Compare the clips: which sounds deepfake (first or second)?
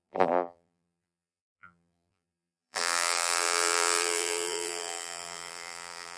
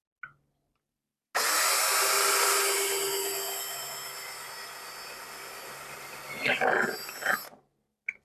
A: first